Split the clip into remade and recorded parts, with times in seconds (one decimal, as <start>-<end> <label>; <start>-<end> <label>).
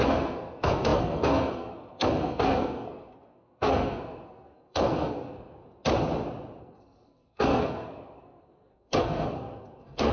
0.0-5.6 remade; 5.6-6.6 recorded; 6.6-10.1 remade